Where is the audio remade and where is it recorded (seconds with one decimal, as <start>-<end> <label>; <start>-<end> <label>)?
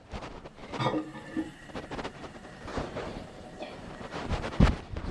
0.0-5.1 remade